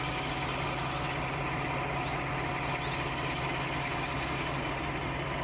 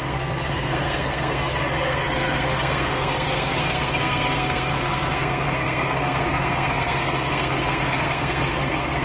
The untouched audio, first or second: first